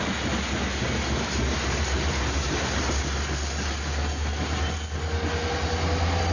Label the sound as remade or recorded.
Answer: recorded